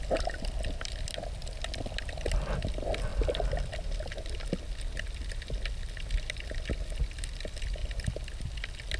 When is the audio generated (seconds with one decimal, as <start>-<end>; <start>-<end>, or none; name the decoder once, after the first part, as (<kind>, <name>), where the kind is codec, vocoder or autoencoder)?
none